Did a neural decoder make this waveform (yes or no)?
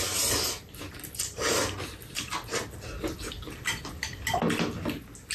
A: no